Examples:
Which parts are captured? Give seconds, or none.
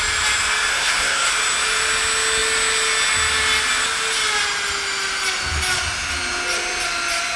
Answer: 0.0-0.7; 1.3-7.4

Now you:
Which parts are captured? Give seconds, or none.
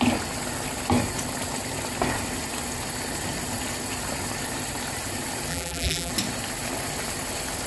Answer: 0.0-5.5; 6.1-7.7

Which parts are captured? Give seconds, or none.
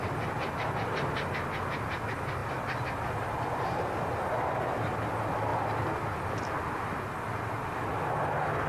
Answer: 0.0-8.7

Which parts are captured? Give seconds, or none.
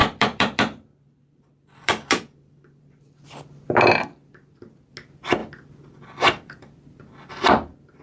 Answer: 2.8-8.0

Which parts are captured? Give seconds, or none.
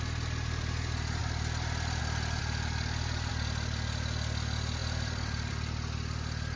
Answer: 0.0-4.8; 5.5-6.6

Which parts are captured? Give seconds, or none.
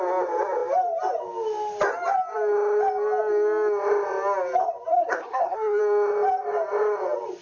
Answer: 0.0-4.9; 5.8-7.4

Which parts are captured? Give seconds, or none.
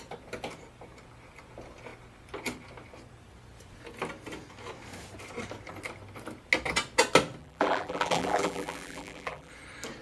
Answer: 0.0-7.4; 9.5-10.0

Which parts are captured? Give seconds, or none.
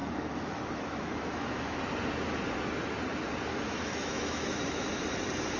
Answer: 1.8-3.5; 4.9-5.6